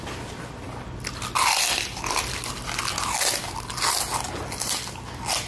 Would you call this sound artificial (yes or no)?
no